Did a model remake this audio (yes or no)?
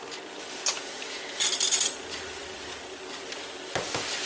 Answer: yes